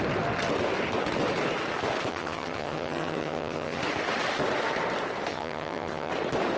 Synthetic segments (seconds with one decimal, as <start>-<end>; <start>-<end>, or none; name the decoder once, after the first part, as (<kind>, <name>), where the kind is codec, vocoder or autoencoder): 2.1-3.8 (vocoder, HiFi-GAN); 5.3-6.1